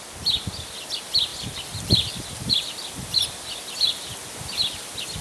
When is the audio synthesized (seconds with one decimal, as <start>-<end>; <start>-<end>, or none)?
none